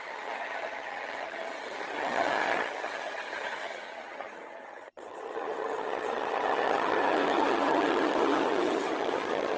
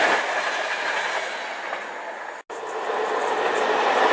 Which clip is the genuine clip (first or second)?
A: second